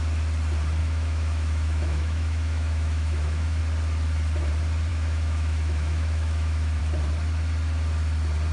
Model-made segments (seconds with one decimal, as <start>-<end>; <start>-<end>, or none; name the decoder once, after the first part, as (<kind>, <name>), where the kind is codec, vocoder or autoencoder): 0.8-3.6 (autoencoder, DAC-VAE); 4.9-6.8